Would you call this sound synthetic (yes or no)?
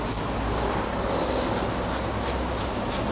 no